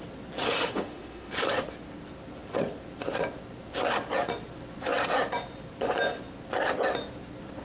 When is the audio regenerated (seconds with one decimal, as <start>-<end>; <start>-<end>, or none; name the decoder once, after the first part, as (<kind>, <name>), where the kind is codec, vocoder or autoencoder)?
0.5-1.3 (autoencoder, DAC-VAE)